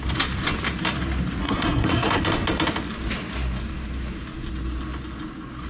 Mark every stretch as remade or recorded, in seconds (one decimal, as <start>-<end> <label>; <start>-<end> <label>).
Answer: 0.0-1.4 recorded; 1.4-2.2 remade; 2.2-5.7 recorded